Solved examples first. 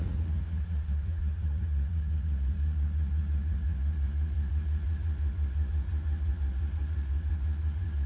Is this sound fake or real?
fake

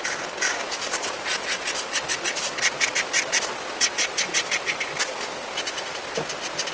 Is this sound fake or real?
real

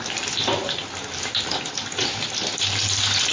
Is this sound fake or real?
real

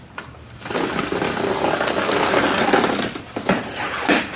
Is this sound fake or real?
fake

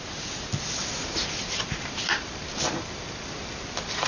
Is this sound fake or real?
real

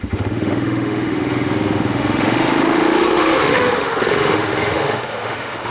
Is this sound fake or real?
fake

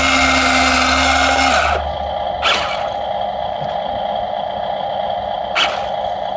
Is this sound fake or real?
real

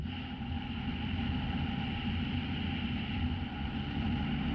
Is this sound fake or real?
real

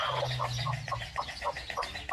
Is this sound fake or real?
real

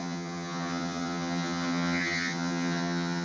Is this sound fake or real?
fake